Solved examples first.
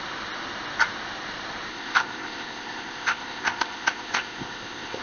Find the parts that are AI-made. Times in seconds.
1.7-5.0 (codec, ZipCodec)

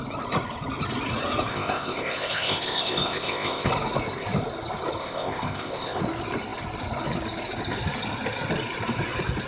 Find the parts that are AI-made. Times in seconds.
1.5-3.7 (codec, ZipCodec); 5.0-6.0

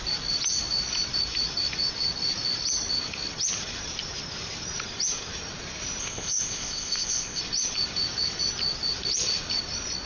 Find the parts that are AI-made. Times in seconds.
6.0-7.4 (codec, ZipCodec)

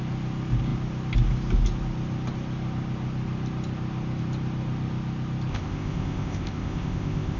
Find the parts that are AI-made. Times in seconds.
5.5-7.4 (codec, ZipCodec)